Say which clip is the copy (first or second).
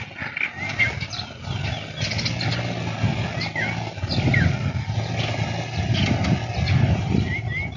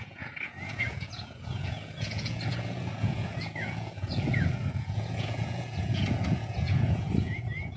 second